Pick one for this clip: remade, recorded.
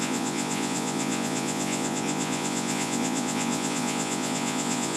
remade